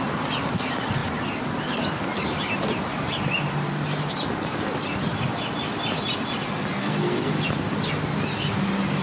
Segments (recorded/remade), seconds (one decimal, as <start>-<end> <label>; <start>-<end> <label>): 0.0-6.8 recorded; 6.8-7.3 remade; 7.3-9.0 recorded